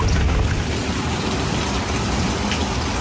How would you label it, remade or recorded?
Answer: recorded